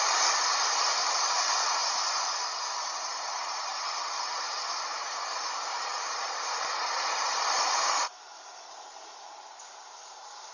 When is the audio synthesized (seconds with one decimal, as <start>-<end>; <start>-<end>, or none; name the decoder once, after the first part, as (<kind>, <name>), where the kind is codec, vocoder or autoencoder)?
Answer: 0.0-1.8 (vocoder, BigVGAN v2); 2.9-10.5

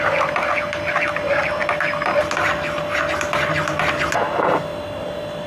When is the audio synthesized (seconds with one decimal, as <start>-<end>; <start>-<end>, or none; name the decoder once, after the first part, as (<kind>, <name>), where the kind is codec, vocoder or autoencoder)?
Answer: none

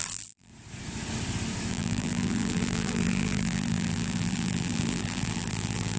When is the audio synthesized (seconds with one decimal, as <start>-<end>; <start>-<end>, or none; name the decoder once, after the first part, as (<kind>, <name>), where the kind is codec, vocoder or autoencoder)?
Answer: 0.0-0.5 (vocoder, BigVGAN v2); 1.7-6.0

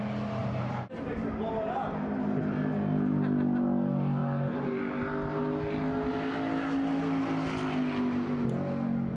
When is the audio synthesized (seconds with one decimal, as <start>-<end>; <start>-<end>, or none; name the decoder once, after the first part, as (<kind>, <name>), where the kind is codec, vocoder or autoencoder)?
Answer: 0.4-1.5 (vocoder, BigVGAN v2)

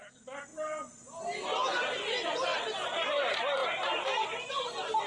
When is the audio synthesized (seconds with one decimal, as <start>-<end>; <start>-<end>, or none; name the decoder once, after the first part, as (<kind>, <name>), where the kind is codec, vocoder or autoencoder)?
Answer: 0.5-1.2 (vocoder, BigVGAN v2)

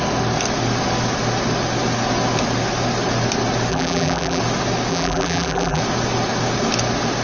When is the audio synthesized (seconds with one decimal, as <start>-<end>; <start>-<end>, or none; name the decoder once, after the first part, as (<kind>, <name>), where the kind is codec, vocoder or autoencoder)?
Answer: 3.7-4.4 (vocoder, BigVGAN v2); 4.9-5.8

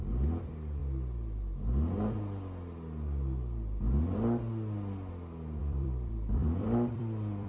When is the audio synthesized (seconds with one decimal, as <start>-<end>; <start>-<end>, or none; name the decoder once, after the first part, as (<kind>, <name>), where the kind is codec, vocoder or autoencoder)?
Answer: 5.6-7.5 (vocoder, BigVGAN v2)

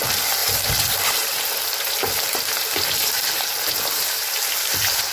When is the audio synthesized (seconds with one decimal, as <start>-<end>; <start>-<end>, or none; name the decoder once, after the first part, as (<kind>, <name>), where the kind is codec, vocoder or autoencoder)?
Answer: none